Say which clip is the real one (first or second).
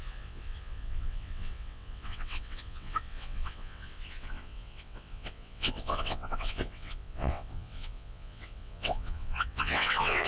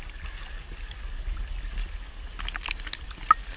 second